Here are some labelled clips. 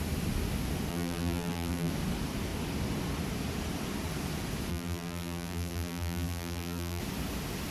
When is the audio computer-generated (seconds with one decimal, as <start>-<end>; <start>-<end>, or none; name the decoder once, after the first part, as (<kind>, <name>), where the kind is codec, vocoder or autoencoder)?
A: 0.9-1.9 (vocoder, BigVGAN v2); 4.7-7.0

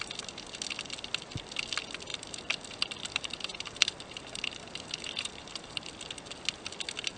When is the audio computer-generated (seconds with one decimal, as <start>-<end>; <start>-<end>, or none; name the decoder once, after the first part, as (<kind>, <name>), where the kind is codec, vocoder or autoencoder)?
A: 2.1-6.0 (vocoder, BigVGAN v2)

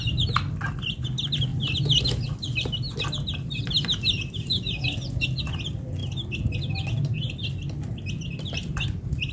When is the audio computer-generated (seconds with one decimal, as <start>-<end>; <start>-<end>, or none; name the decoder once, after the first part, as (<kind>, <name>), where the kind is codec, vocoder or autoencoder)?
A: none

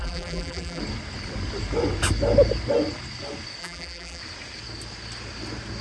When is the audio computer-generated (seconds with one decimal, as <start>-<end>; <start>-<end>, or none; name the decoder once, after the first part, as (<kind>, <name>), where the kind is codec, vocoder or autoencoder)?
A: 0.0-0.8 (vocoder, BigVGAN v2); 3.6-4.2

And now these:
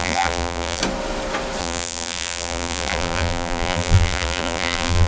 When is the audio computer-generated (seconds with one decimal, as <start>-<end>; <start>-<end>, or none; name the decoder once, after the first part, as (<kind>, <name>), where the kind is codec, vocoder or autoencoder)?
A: 0.0-0.8 (vocoder, BigVGAN v2); 1.6-5.1

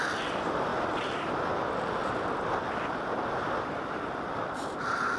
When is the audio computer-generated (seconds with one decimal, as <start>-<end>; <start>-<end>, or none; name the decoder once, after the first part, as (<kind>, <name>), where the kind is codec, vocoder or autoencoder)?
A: 0.0-0.7 (vocoder, BigVGAN v2); 3.3-5.2